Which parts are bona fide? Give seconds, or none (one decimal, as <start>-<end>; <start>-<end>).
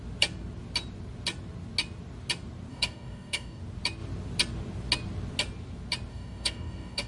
0.0-2.7; 3.6-6.1